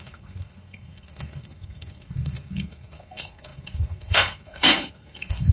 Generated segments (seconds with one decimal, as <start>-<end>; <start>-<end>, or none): 0.0-5.5